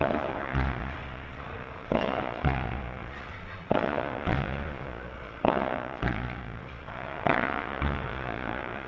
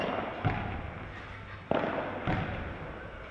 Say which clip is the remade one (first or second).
first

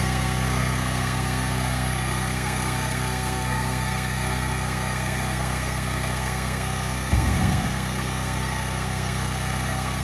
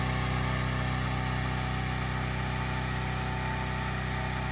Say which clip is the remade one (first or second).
first